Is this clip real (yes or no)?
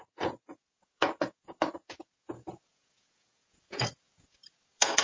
no